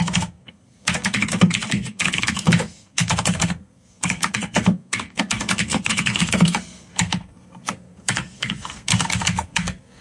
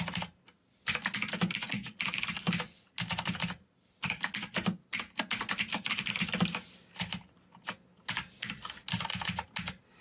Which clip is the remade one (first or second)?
first